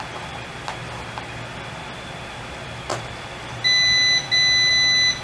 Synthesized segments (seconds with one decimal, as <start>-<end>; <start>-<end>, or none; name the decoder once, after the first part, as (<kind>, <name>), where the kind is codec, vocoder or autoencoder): none